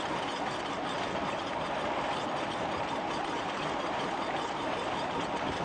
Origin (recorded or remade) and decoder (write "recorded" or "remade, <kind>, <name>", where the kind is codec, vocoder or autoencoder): recorded